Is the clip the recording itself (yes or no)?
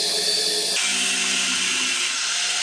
yes